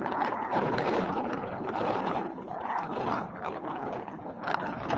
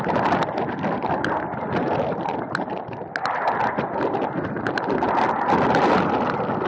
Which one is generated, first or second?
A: first